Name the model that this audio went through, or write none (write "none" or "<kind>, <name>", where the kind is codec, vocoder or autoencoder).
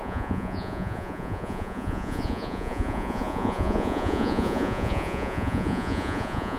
vocoder, Vocos